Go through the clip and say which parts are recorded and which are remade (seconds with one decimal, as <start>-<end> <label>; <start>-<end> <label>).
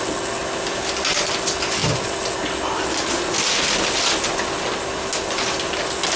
0.0-6.2 recorded